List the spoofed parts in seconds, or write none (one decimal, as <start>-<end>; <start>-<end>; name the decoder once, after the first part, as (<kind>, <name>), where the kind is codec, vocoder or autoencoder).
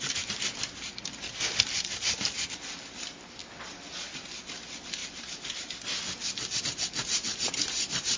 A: 5.0-6.6 (vocoder, BigVGAN v2)